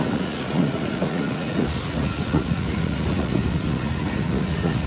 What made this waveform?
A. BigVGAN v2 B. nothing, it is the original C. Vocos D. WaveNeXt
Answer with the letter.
C